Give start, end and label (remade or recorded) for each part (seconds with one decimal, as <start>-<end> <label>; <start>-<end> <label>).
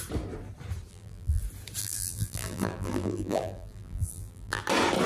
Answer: 0.0-0.9 recorded; 0.9-1.4 remade; 1.4-1.8 recorded; 1.8-4.6 remade; 4.6-5.1 recorded